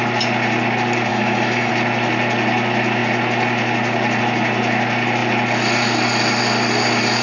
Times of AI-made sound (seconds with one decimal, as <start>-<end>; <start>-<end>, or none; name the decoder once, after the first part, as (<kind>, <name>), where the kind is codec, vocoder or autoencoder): 1.1-1.7 (autoencoder, DAC-VAE)